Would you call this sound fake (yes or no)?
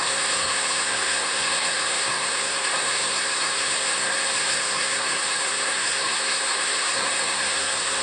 yes